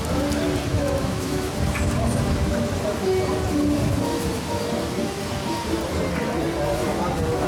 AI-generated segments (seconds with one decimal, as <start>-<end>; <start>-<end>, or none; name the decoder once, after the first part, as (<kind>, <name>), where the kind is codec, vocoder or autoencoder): 0.7-1.5 (autoencoder, DAC-VAE)